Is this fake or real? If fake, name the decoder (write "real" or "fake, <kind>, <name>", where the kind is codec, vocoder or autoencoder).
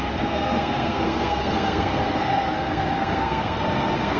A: fake, codec, SNAC